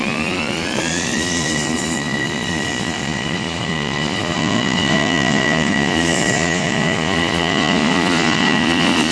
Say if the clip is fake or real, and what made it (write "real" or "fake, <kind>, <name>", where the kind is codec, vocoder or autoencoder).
fake, vocoder, Vocos